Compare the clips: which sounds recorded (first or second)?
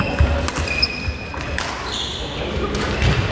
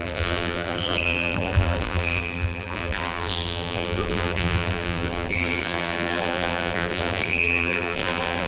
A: first